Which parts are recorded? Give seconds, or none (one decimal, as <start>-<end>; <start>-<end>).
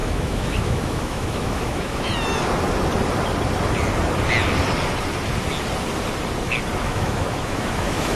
2.1-6.8